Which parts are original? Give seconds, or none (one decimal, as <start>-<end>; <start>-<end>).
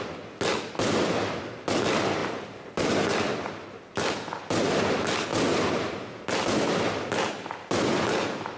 0.0-2.2; 4.1-5.3; 7.0-8.6